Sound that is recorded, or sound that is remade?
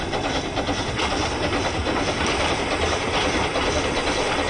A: recorded